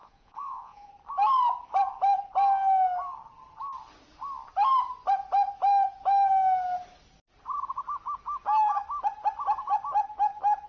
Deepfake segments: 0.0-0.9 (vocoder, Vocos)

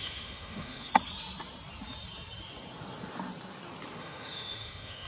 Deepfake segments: 0.0-0.9 (autoencoder, DAC-VAE); 4.0-5.1

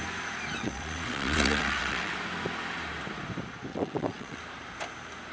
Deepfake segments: 0.6-2.1 (vocoder, WaveNeXt); 3.7-4.4

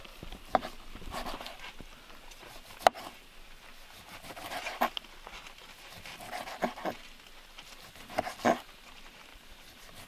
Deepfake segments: 9.3-10.1 (vocoder, BigVGAN v2)

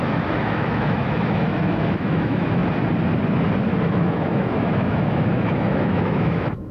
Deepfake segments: 0.0-2.6 (autoencoder, DAC-VAE); 3.9-6.7

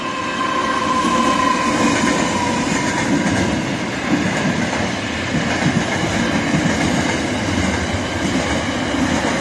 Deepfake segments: 0.6-1.7 (vocoder, BigVGAN v2)